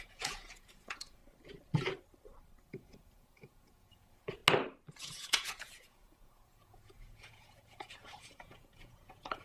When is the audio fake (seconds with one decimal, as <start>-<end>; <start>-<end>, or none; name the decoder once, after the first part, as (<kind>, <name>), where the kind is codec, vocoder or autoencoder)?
0.0-1.2 (vocoder, Vocos); 2.7-4.4; 5.0-9.4